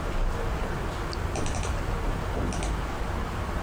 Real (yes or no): yes